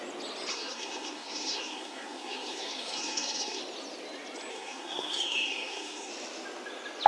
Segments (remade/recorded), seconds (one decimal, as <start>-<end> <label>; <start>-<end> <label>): 0.0-0.5 recorded; 0.5-3.6 remade; 3.6-4.5 recorded; 4.5-6.1 remade; 6.1-7.1 recorded